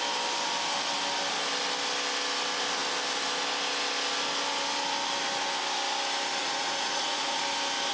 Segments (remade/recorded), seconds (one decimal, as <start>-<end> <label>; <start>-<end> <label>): 0.0-6.4 recorded; 6.4-7.4 remade; 7.4-7.9 recorded